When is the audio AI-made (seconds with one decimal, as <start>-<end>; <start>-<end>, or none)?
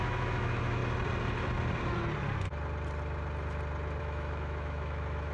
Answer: 0.0-0.8; 4.0-5.3